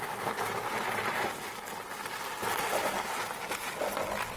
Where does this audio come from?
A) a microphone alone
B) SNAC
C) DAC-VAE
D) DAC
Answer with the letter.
A